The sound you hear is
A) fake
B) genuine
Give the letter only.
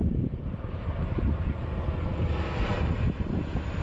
A